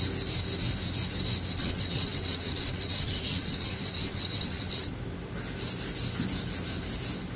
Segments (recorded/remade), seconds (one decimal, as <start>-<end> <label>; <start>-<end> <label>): 0.0-1.6 recorded; 1.6-4.9 remade; 4.9-7.4 recorded